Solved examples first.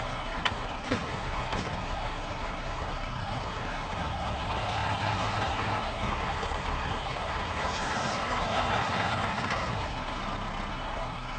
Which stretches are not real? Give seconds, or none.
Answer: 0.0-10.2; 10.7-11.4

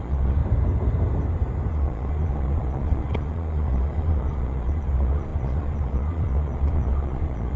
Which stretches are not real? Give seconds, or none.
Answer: 0.0-0.4; 1.7-7.6

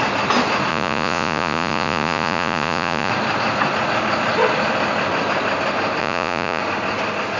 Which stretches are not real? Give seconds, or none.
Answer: 0.7-3.1; 6.0-6.6

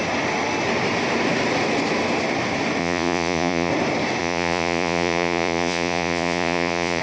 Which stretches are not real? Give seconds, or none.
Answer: 2.8-3.7; 4.2-7.0

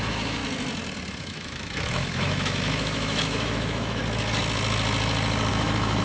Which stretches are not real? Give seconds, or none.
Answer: 0.0-0.4; 1.2-4.0; 5.5-6.0

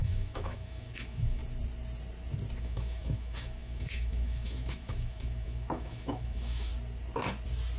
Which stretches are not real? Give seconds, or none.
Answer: 0.0-1.4; 2.6-6.7